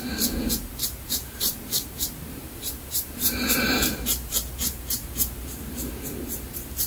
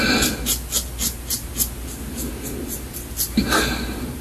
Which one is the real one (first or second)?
second